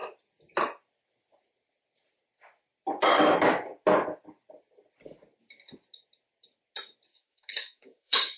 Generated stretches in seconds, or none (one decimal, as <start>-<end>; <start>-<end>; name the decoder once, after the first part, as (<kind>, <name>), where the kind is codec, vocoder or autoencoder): 7.1-8.4 (autoencoder, DAC-VAE)